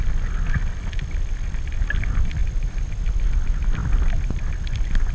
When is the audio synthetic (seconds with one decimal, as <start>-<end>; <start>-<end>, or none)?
2.4-2.9